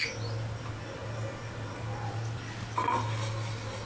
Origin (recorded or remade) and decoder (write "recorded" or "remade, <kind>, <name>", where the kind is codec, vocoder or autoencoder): recorded